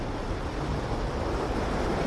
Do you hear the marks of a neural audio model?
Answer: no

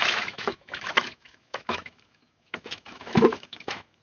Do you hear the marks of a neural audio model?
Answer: yes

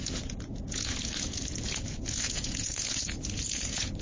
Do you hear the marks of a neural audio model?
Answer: yes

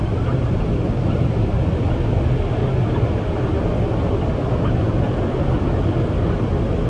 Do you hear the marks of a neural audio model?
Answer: no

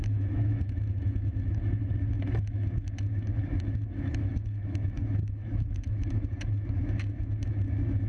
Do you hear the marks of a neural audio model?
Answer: yes